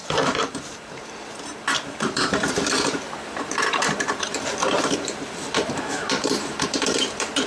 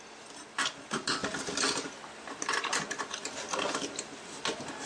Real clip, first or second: second